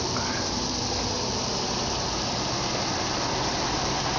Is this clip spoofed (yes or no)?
no